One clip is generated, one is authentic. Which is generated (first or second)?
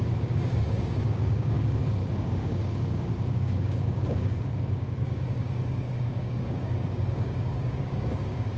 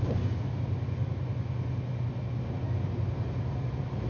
first